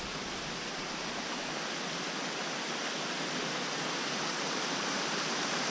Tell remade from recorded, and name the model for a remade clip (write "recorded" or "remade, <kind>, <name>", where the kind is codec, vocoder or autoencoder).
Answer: recorded